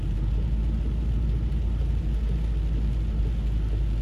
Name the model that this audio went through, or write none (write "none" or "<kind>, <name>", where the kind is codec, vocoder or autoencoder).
none